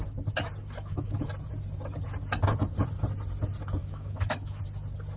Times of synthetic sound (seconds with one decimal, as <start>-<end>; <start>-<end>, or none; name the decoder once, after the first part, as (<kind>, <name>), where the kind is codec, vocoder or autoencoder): 0.6-1.3 (autoencoder, DAC-VAE); 3.8-4.6